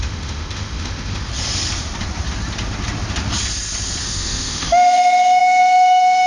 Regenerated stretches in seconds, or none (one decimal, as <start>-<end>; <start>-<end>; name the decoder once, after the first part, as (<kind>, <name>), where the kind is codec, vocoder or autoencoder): 0.0-1.3 (autoencoder, DAC-VAE); 4.0-6.3